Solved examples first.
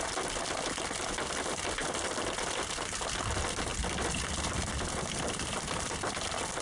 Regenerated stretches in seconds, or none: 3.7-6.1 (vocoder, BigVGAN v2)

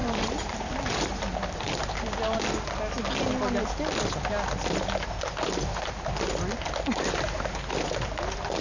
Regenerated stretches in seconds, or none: 0.0-1.8 (vocoder, BigVGAN v2)

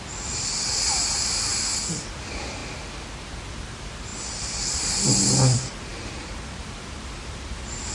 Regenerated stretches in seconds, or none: 0.0-1.5 (vocoder, BigVGAN v2); 2.1-2.6; 3.5-7.9

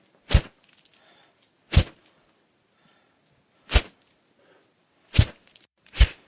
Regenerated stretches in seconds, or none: 5.4-6.3 (vocoder, BigVGAN v2)

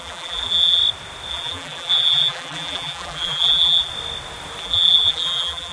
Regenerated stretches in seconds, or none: 0.0-0.8 (vocoder, BigVGAN v2); 1.3-3.9; 4.6-5.7

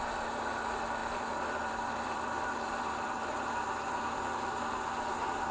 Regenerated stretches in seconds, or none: 1.0-3.5 (vocoder, BigVGAN v2)

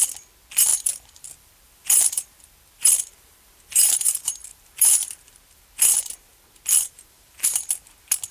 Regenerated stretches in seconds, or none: 0.7-5.6 (vocoder, BigVGAN v2); 6.3-7.0